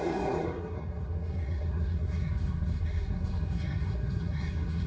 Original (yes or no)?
no